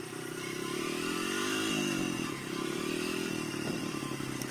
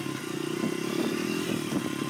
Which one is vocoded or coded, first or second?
first